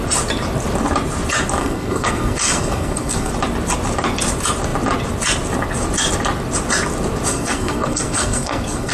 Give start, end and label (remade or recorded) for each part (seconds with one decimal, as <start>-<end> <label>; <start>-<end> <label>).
0.0-1.6 recorded; 1.6-3.3 remade; 3.3-7.3 recorded; 7.3-8.9 remade